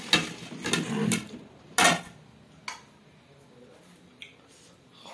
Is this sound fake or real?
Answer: real